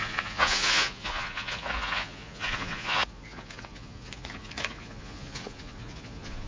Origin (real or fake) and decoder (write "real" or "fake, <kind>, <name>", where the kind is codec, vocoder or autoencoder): fake, vocoder, Vocos